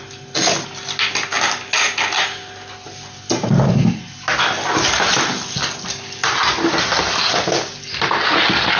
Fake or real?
real